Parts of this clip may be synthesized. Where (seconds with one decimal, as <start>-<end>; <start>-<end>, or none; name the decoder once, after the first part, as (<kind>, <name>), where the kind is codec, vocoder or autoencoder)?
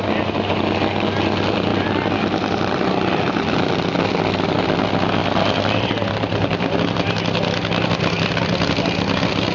1.7-3.5 (vocoder, BigVGAN v2); 5.2-8.4